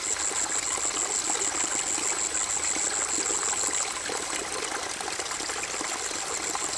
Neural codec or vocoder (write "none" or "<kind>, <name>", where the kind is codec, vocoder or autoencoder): none